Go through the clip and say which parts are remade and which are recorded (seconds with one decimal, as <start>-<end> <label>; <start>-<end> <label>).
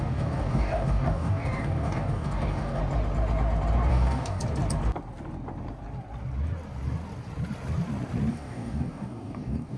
0.0-2.8 remade; 2.8-3.9 recorded; 3.9-4.4 remade; 4.4-8.3 recorded; 8.3-9.8 remade